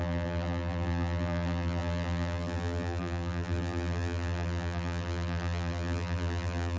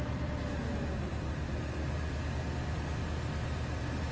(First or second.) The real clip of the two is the second